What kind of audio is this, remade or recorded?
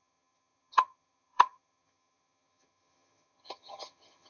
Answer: remade